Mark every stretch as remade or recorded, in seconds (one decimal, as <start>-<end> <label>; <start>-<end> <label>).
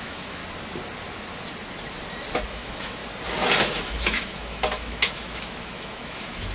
0.0-0.4 remade; 0.4-2.5 recorded; 2.5-3.0 remade; 3.0-3.6 recorded; 3.6-6.5 remade